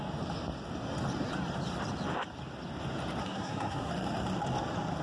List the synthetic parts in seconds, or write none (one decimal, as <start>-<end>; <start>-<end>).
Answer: 3.2-3.9